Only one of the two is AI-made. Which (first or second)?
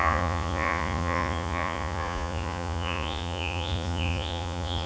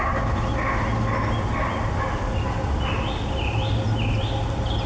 first